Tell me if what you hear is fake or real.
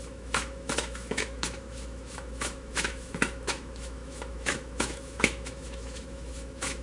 fake